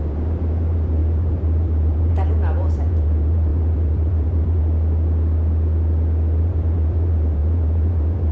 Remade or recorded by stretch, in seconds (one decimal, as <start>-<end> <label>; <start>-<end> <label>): 0.0-4.6 remade; 4.6-6.4 recorded; 6.4-8.3 remade